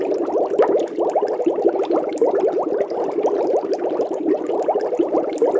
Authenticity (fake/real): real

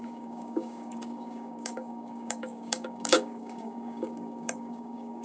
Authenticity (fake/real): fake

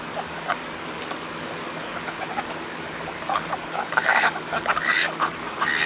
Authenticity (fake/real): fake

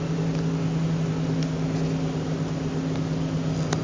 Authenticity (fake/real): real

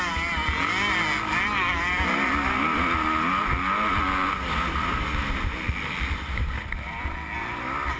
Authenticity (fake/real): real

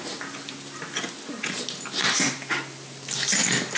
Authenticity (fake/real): real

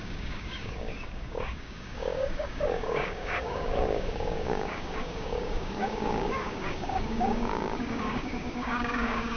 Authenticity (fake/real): fake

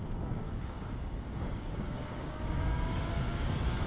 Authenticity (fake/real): fake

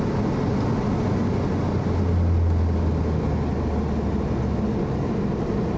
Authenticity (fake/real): real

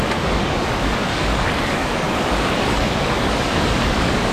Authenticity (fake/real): fake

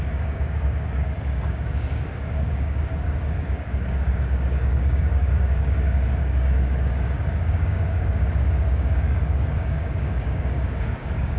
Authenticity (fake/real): fake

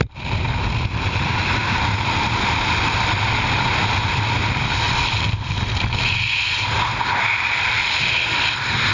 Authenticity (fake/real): real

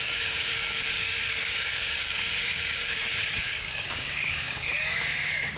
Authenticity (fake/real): fake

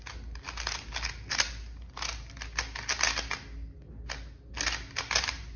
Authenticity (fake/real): real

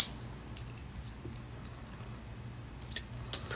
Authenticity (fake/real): real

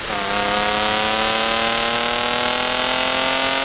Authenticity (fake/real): real